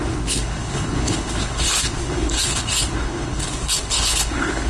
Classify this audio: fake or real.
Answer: fake